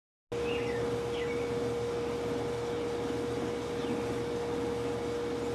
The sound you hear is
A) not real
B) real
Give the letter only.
B